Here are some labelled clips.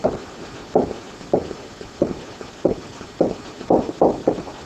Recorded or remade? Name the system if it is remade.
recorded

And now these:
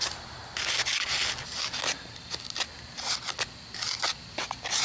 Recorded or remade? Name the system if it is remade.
recorded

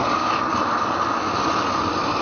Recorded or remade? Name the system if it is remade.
recorded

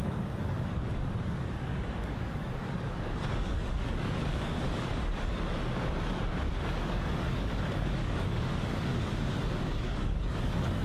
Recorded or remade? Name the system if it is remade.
remade, codec, DAC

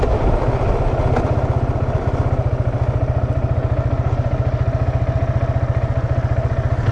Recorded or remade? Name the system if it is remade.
recorded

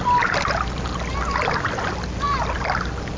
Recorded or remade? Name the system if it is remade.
recorded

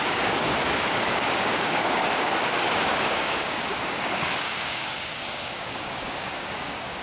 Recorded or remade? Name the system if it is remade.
remade, codec, DAC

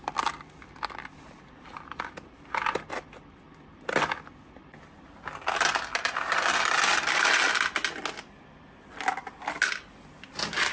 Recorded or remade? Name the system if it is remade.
recorded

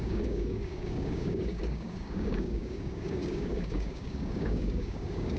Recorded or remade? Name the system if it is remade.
remade, codec, DAC